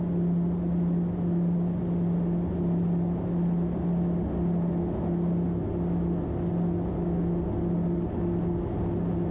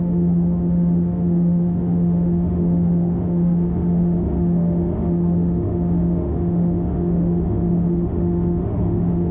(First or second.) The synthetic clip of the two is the second